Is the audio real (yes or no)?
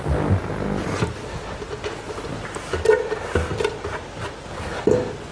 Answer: yes